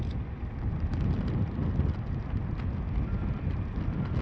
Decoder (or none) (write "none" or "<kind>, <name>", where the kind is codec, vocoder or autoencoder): none